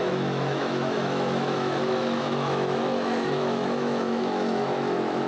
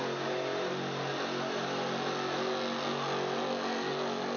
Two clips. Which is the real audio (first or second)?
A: second